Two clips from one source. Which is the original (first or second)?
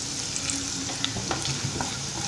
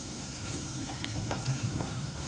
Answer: first